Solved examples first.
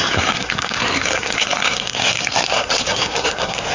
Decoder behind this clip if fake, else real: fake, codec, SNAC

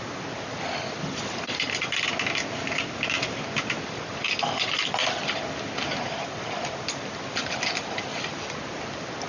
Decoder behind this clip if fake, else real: real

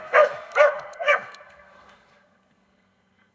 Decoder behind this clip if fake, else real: fake, codec, SNAC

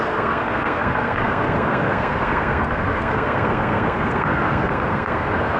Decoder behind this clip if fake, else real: fake, codec, SNAC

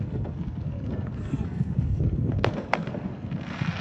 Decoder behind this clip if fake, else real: fake, codec, SNAC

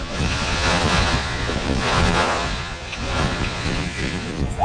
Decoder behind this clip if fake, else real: fake, vocoder, Vocos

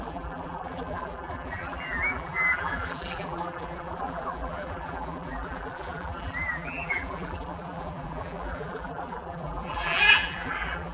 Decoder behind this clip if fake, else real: fake, vocoder, BigVGAN v2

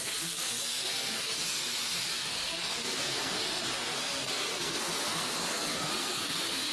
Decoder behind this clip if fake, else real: fake, codec, SNAC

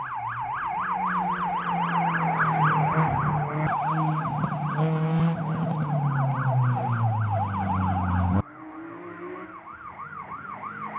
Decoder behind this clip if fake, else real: real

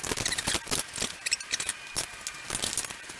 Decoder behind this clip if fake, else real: real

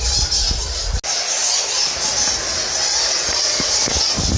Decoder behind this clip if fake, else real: real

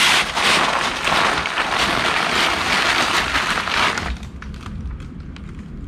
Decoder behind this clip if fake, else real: real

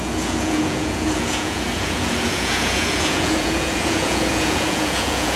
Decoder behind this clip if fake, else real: fake, vocoder, Vocos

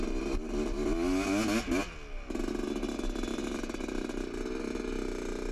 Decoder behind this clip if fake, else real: real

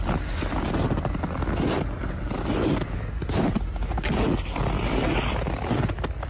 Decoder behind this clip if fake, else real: real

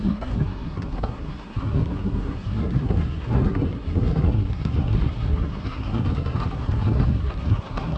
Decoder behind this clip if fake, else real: fake, codec, SNAC